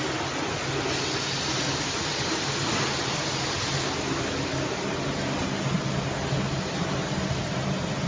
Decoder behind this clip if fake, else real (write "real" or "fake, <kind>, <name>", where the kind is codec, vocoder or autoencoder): real